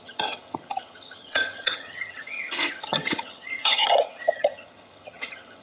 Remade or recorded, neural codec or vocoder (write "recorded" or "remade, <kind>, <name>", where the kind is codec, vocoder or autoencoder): remade, vocoder, HiFi-GAN